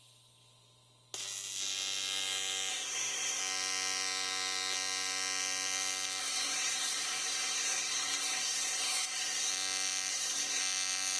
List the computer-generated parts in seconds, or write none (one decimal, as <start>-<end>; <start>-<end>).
2.7-3.4; 6.2-9.5; 10.1-10.6